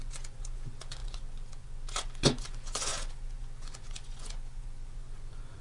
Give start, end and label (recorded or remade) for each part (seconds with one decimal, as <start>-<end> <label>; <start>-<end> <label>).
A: 0.0-5.6 remade